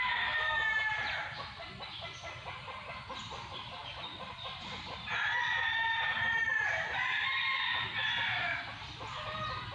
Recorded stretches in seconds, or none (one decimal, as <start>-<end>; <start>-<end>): 0.0-9.7